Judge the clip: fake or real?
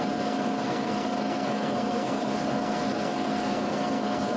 fake